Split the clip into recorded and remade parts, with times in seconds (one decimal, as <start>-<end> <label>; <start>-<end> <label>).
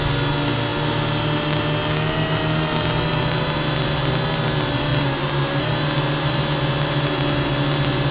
0.0-8.1 recorded